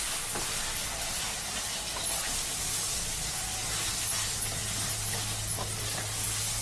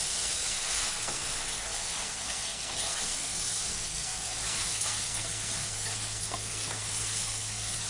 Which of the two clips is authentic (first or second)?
first